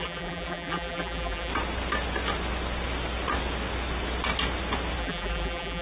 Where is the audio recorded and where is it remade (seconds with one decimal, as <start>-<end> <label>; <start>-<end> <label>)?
0.0-1.5 remade; 1.5-5.0 recorded; 5.0-5.8 remade

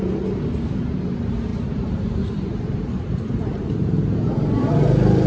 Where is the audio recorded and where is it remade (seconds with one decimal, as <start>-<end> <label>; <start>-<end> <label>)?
0.0-1.5 recorded; 1.5-4.7 remade; 4.7-5.3 recorded

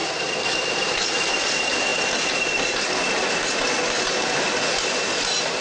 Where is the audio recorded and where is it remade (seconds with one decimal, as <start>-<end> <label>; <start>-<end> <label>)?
0.0-5.6 recorded

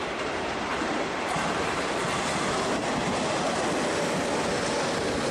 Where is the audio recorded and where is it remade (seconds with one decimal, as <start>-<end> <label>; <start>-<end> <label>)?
0.0-0.7 recorded; 0.7-3.5 remade; 3.5-5.3 recorded

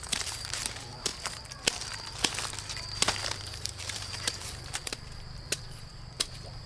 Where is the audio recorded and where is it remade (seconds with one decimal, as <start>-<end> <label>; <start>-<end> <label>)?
0.0-1.1 remade; 1.1-3.4 recorded; 3.4-6.7 remade

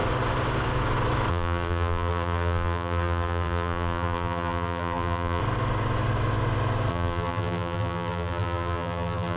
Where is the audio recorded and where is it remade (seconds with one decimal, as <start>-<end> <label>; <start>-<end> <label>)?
0.0-1.3 recorded; 1.3-5.4 remade; 5.4-6.9 recorded; 6.9-9.4 remade